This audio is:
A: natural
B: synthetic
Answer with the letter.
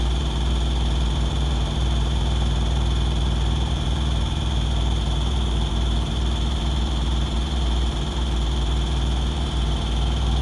B